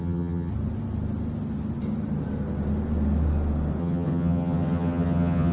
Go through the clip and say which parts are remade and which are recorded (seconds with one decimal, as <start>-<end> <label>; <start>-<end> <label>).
0.0-0.5 remade; 0.5-3.8 recorded; 3.8-5.5 remade